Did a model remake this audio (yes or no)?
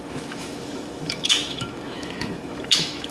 yes